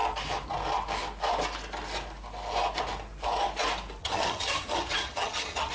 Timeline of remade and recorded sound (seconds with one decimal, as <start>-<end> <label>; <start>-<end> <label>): 0.0-4.0 recorded; 4.0-5.7 remade